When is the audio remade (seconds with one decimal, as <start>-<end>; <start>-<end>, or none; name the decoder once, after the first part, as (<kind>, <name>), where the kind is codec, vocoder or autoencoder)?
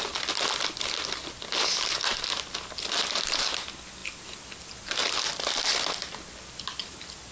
none